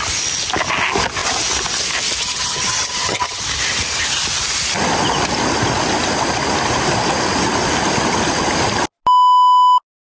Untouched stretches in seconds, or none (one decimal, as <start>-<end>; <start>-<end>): 0.0-2.2; 3.4-10.1